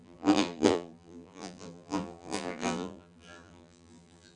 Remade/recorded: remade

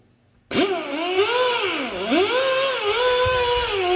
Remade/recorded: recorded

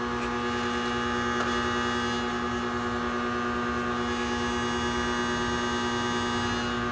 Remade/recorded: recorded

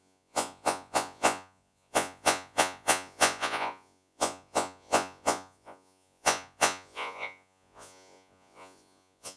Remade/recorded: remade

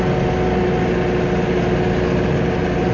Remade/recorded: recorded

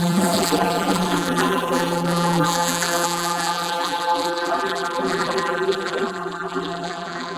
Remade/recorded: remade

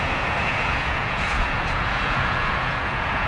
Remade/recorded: remade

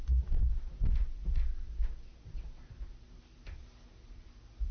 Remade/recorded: recorded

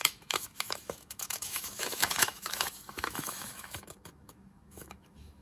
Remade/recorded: remade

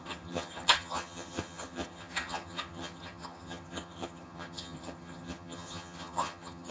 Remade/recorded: remade